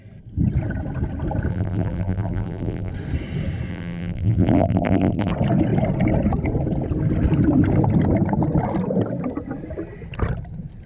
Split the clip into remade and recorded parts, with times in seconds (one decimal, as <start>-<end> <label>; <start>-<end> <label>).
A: 0.0-1.5 recorded; 1.5-2.9 remade; 2.9-3.7 recorded; 3.7-5.3 remade; 5.3-10.9 recorded